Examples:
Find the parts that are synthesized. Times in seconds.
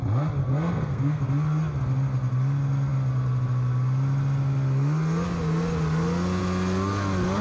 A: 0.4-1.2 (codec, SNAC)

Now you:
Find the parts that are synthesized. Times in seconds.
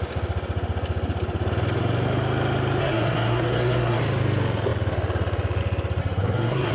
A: 2.8-4.0 (codec, SNAC); 6.0-6.7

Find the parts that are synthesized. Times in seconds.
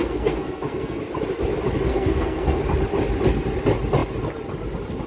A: 0.0-1.0 (codec, SNAC); 1.9-2.6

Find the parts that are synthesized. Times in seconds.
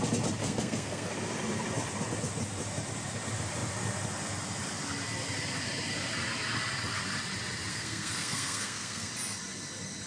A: 0.4-1.1 (codec, SNAC); 7.7-9.1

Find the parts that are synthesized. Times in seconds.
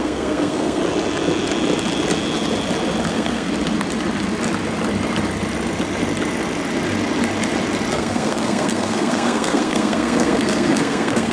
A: 0.0-0.8 (codec, SNAC); 3.1-3.5; 7.9-11.3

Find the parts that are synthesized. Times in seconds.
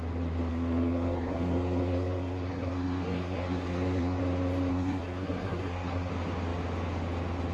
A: 0.5-4.2 (codec, SNAC); 4.7-6.1